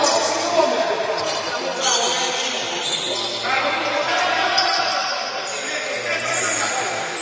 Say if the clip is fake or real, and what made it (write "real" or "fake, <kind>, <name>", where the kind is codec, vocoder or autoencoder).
fake, vocoder, BigVGAN v2